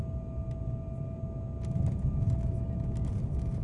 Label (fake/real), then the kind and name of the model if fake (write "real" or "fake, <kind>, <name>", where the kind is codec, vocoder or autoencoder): real